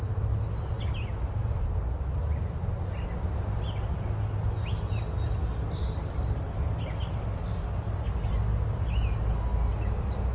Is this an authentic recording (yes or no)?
yes